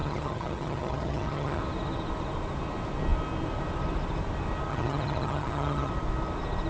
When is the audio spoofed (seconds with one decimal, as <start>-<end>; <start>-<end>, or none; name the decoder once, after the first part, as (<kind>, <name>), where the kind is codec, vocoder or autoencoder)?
0.0-1.6 (vocoder, HiFi-GAN); 4.7-5.9